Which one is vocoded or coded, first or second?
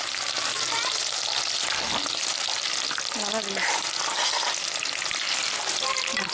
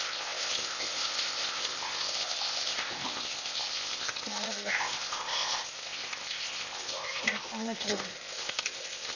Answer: second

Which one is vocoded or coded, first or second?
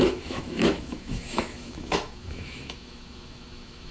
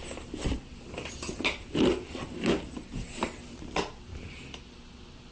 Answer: first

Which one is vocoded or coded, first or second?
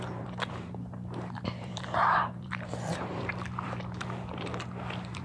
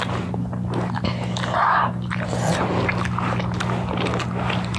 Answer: first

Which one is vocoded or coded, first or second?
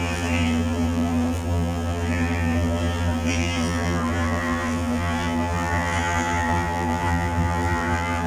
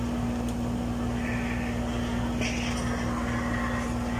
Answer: first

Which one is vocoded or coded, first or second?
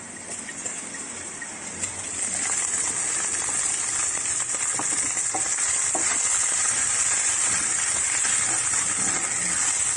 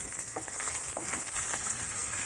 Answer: second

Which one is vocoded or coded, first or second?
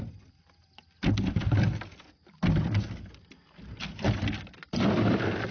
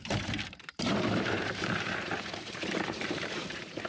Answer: second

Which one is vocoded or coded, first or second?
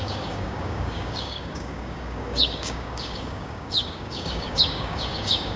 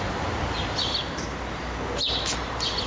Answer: first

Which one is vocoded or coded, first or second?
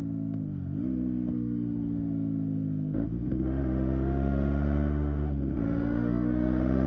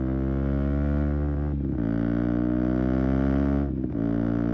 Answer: first